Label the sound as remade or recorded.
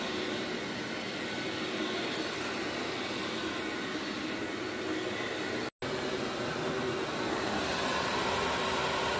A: recorded